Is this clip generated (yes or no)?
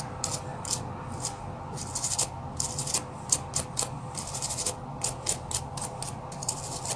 no